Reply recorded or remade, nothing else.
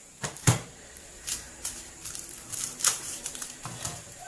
remade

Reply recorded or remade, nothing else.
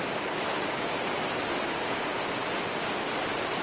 recorded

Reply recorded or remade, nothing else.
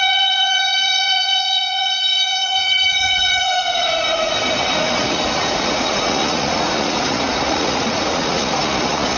remade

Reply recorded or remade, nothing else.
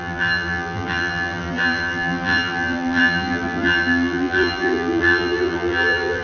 remade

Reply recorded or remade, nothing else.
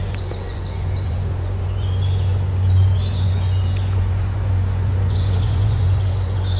remade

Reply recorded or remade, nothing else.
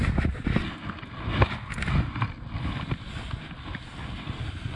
recorded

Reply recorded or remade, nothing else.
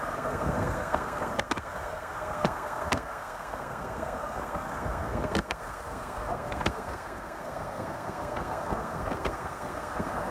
remade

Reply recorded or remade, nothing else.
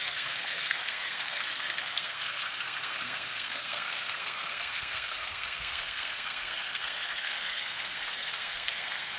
remade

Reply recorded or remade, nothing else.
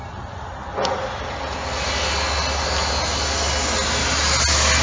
recorded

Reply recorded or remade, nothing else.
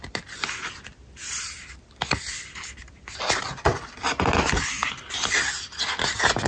recorded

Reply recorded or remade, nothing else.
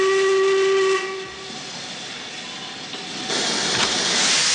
recorded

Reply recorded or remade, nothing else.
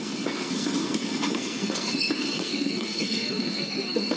remade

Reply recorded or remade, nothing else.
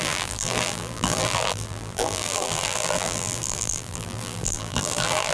remade